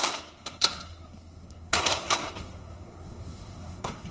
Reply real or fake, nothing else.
fake